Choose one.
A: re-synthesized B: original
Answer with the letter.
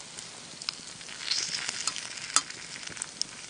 B